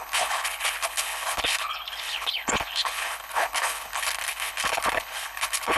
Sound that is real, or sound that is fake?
fake